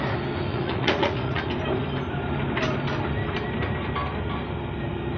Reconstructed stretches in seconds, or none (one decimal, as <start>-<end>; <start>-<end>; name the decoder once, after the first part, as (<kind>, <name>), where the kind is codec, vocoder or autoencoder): 0.5-1.4 (vocoder, Vocos)